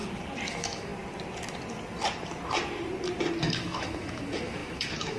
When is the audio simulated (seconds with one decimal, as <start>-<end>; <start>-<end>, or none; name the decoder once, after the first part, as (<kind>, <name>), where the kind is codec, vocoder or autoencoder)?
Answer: 0.5-0.9 (autoencoder, DAC-VAE); 3.4-5.2